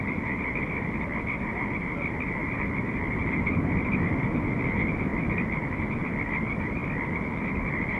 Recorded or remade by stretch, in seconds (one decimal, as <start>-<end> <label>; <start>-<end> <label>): 0.0-2.4 remade; 2.4-3.0 recorded; 3.0-6.8 remade; 6.8-7.5 recorded; 7.5-8.0 remade